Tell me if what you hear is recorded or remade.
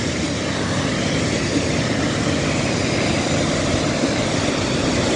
recorded